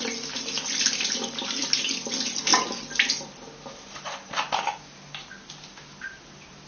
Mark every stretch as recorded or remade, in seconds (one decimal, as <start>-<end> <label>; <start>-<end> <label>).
0.0-6.7 recorded